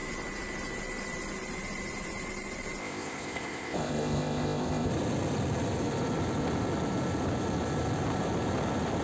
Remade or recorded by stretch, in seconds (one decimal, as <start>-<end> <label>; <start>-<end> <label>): 0.0-2.8 recorded; 2.8-4.9 remade; 4.9-9.0 recorded